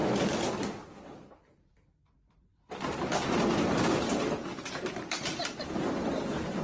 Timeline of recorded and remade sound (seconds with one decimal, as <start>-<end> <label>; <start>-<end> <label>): 0.0-0.6 recorded; 0.6-2.5 remade; 2.5-4.9 recorded; 4.9-6.6 remade